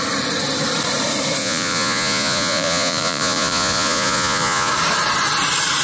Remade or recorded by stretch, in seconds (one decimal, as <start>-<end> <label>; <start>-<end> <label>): 0.0-1.4 recorded; 1.4-4.7 remade; 4.7-5.8 recorded